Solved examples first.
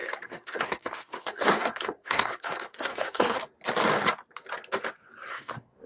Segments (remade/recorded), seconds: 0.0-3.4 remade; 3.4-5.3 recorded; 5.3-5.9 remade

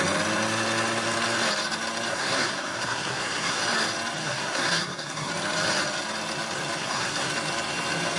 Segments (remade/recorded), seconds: 0.0-2.1 recorded; 2.1-3.6 remade; 3.6-4.2 recorded; 4.2-5.3 remade; 5.3-6.8 recorded; 6.8-7.3 remade; 7.3-8.2 recorded

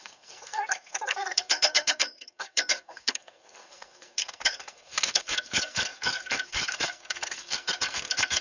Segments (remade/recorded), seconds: 0.0-8.4 remade

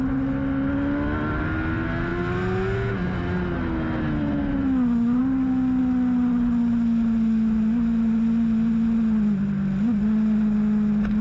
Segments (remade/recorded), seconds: 0.0-11.2 recorded

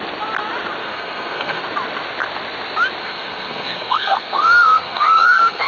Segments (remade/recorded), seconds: 0.0-0.8 recorded; 0.8-1.6 remade; 1.6-3.0 recorded; 3.0-5.7 remade

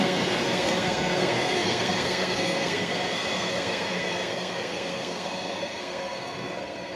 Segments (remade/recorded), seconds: 0.0-7.0 remade

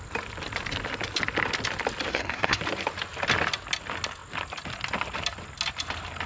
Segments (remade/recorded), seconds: 0.0-2.1 recorded; 2.1-2.6 remade; 2.6-6.3 recorded

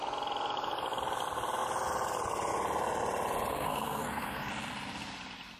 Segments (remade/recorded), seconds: 0.0-3.5 recorded; 3.5-4.5 remade; 4.5-5.6 recorded